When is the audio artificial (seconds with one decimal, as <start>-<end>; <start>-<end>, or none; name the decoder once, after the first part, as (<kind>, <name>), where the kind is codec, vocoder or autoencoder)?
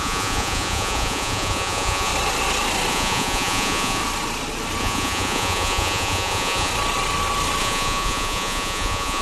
0.0-2.1 (vocoder, Vocos); 2.9-4.0; 4.8-6.7; 7.6-9.2